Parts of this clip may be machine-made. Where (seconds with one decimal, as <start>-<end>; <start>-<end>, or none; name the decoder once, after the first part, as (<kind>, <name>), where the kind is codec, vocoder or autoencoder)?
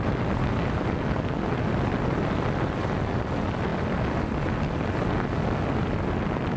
none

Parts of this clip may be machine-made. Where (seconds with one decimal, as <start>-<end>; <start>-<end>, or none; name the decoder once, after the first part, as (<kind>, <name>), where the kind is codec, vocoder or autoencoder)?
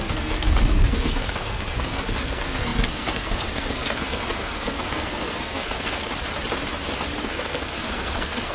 0.0-6.1 (codec, SNAC); 7.2-8.5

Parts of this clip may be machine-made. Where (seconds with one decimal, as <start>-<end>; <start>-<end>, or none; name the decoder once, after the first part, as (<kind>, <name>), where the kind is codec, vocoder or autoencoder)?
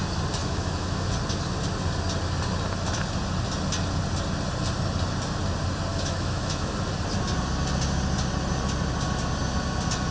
0.4-1.1 (autoencoder, DAC-VAE); 5.9-6.7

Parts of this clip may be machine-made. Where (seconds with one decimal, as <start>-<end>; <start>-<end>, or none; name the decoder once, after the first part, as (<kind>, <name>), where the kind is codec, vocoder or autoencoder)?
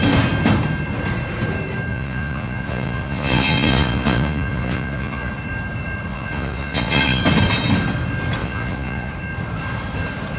1.9-5.3 (vocoder, Vocos); 6.1-7.2; 8.4-9.1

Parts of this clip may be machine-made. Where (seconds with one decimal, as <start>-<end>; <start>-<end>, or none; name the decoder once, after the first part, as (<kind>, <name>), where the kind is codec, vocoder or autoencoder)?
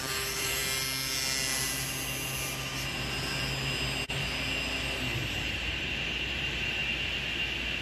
0.0-0.6 (vocoder, BigVGAN v2); 5.3-6.8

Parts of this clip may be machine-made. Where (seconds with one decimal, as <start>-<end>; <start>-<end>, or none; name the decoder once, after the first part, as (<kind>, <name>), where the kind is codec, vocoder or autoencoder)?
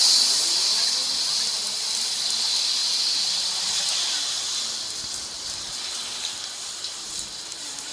2.8-3.5 (vocoder, BigVGAN v2)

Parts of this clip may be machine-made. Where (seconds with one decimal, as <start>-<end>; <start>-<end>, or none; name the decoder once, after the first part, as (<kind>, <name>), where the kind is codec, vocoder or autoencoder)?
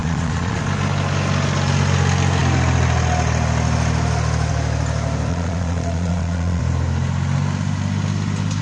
0.0-0.6 (vocoder, Vocos); 5.3-6.6